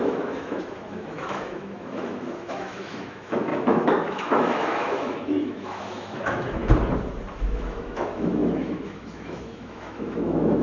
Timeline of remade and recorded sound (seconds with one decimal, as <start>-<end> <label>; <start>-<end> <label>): 0.0-6.6 remade; 6.6-7.4 recorded; 7.4-10.6 remade